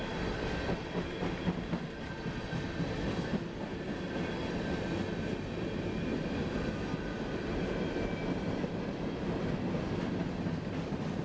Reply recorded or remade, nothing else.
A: recorded